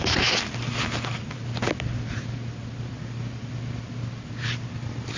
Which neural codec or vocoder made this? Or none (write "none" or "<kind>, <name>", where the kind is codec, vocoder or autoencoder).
none